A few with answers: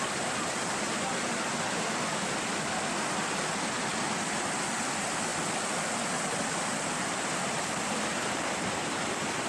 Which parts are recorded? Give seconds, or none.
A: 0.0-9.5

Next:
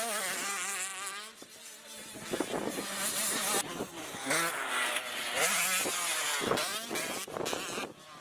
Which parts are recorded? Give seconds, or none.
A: 0.9-5.8

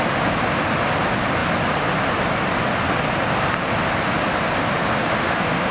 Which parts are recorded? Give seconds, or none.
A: 0.0-5.1

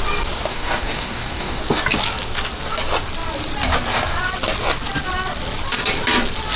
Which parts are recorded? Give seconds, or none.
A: 0.0-0.5; 1.6-6.6